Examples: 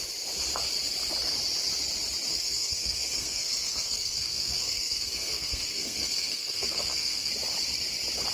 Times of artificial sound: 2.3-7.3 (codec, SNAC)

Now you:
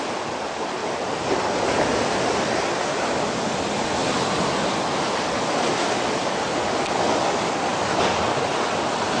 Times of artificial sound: none

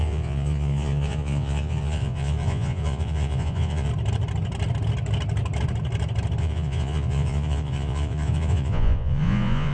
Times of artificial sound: 0.0-3.9 (vocoder, Vocos); 6.4-9.7

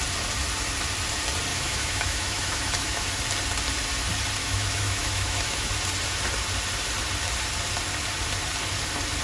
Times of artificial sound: 1.5-3.1 (autoencoder, DAC-VAE); 4.4-5.7

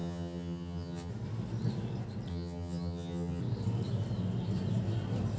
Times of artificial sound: 0.0-1.1 (vocoder, HiFi-GAN); 2.3-3.4

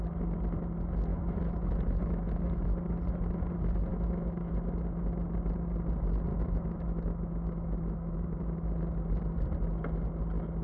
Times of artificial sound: 1.1-2.6 (autoencoder, DAC-VAE); 3.9-4.5; 6.3-8.7

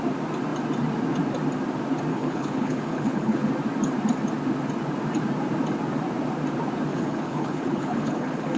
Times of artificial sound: 2.1-3.5 (codec, HILCodec); 6.9-8.6

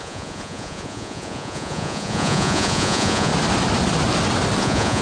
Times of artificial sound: 0.0-3.3 (vocoder, Vocos); 4.6-5.0